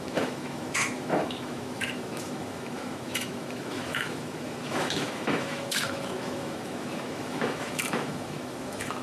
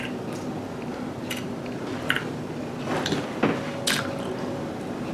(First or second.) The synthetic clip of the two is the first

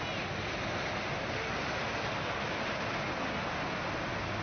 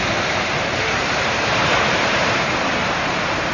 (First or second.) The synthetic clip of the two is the second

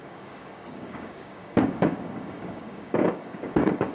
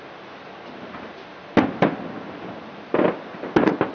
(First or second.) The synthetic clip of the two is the first